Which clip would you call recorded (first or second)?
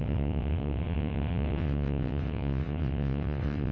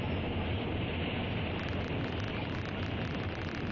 second